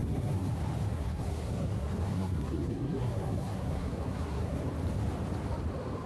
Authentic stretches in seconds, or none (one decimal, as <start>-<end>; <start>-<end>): 0.5-0.9; 4.6-6.1